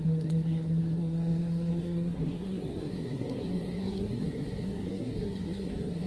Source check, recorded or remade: remade